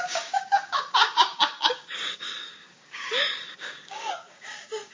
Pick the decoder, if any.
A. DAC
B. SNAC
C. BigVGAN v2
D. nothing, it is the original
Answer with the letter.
A